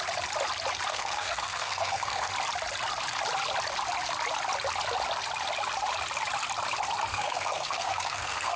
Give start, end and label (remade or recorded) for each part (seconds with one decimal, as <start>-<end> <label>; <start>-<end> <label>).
0.0-0.9 recorded; 0.9-2.3 remade; 2.3-7.1 recorded; 7.1-8.6 remade